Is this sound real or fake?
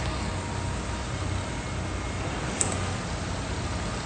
real